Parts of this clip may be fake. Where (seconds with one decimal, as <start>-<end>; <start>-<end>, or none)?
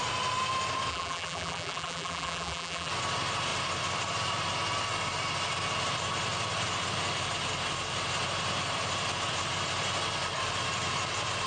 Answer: 0.9-2.9